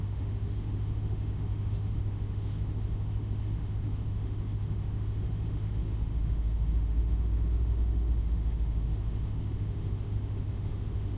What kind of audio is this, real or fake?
fake